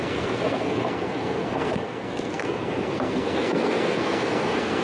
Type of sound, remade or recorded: remade